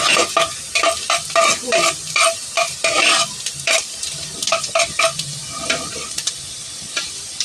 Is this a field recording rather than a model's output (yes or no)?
no